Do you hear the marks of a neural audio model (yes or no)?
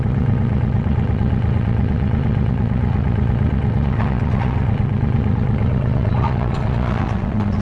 yes